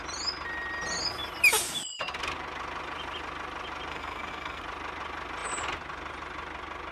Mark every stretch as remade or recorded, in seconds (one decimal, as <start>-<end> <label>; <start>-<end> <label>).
0.0-3.9 recorded; 3.9-4.6 remade; 4.6-6.9 recorded